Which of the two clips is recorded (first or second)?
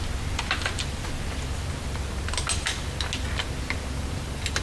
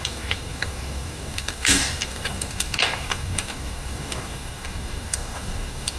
first